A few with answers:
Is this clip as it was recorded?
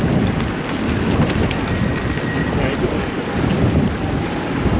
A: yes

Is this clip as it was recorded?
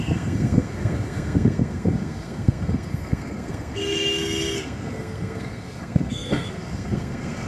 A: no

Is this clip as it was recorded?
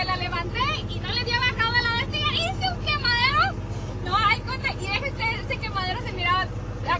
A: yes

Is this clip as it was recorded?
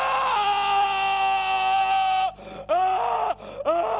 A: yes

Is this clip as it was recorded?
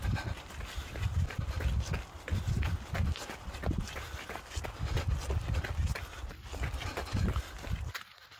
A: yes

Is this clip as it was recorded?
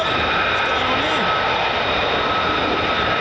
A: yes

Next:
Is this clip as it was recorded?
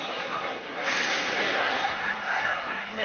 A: no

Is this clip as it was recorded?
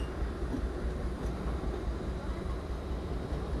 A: yes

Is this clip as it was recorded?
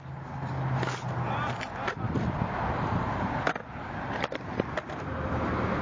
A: yes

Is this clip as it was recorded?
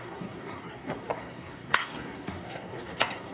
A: no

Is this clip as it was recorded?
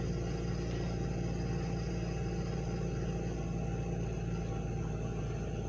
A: yes